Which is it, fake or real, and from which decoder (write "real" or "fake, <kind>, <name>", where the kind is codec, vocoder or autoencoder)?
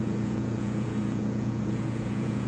fake, vocoder, Vocos